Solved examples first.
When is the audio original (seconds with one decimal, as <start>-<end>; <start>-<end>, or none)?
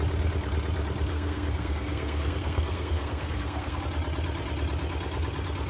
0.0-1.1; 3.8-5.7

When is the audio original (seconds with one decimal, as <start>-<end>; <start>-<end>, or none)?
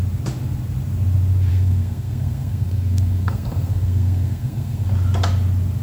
0.0-1.5; 4.9-5.8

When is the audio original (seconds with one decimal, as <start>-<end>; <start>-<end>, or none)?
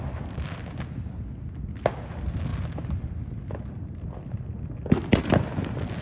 0.0-6.0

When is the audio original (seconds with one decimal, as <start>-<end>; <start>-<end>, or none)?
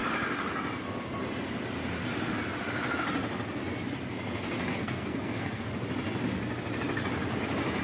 0.0-4.7; 5.6-7.8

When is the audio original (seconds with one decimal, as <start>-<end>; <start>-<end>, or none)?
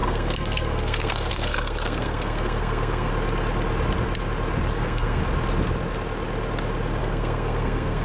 3.1-4.7; 5.2-7.0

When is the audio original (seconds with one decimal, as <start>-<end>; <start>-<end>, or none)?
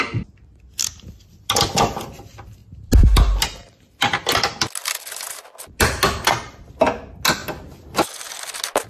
0.0-8.9